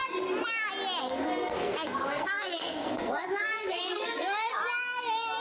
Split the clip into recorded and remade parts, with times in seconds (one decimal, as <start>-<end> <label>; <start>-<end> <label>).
0.0-1.0 recorded; 1.0-4.6 remade; 4.6-5.4 recorded